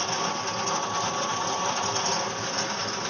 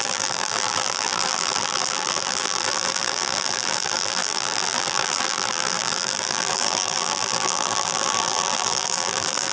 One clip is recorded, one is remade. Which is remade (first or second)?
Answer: second